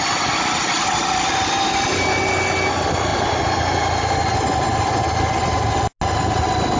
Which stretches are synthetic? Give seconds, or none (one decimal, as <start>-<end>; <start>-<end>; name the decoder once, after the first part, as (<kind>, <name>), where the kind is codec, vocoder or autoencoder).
3.1-4.2 (vocoder, BigVGAN v2)